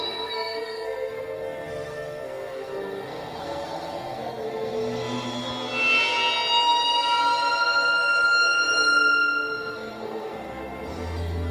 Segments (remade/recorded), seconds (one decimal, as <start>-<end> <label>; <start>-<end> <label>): 0.0-5.5 remade; 5.5-9.7 recorded; 9.7-11.5 remade